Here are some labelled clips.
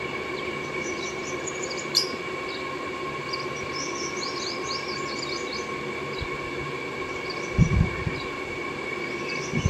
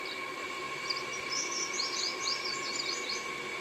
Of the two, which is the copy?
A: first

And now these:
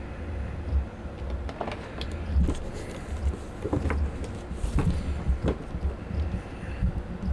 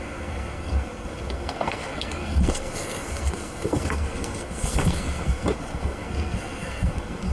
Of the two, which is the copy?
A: second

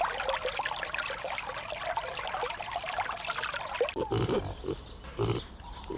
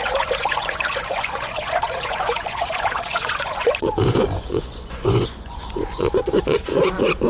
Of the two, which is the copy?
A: second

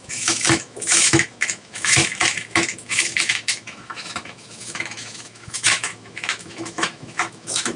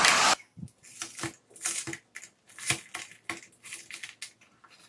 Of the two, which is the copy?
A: first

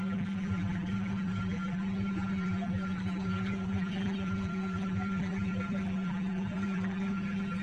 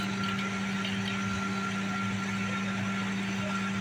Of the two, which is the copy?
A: first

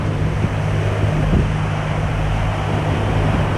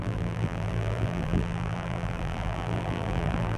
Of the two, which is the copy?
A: second